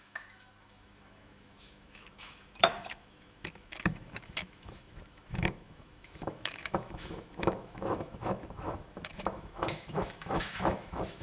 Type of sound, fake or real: fake